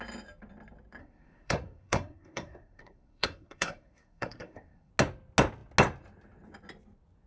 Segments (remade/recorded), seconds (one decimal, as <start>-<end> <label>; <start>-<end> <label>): 0.0-1.0 recorded; 1.0-4.9 remade; 4.9-7.3 recorded